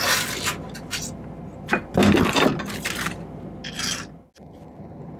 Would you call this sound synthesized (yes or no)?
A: no